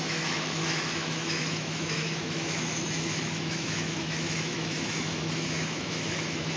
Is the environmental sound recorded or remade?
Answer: remade